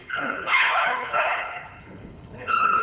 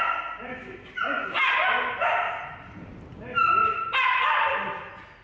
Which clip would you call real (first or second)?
second